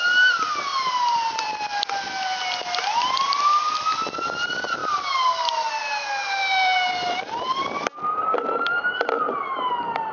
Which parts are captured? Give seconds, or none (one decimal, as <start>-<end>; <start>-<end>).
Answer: 0.0-0.7; 2.6-4.8; 9.7-10.1